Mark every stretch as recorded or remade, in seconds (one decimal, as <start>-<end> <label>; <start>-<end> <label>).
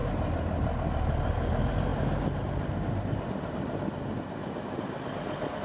0.0-5.6 recorded